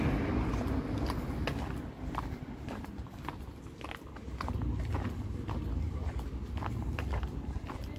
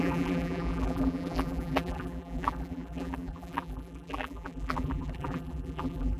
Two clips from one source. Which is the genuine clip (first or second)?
first